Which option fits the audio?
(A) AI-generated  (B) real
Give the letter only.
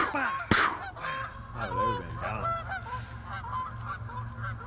B